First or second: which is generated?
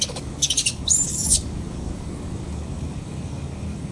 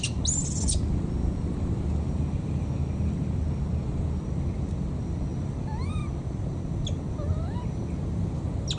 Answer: first